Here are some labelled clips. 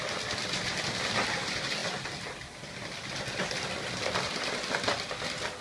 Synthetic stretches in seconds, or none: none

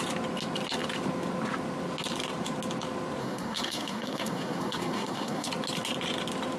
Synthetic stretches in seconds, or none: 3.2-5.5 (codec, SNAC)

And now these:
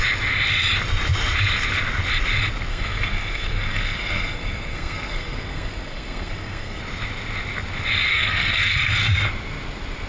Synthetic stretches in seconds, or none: 2.7-6.8 (codec, SNAC); 8.1-8.7

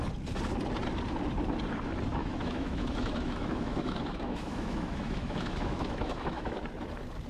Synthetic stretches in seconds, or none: 2.2-6.6 (autoencoder, DAC-VAE)

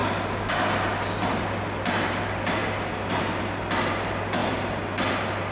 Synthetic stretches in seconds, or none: 0.6-4.4 (vocoder, BigVGAN v2); 5.1-5.5